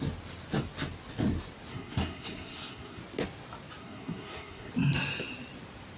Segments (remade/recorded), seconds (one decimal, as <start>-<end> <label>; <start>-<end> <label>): 0.0-1.7 recorded; 1.7-3.0 remade; 3.0-3.8 recorded; 3.8-4.7 remade; 4.7-6.0 recorded